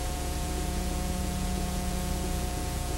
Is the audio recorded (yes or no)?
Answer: no